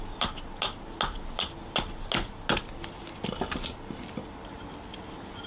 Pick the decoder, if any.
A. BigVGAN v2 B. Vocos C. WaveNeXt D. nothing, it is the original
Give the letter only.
D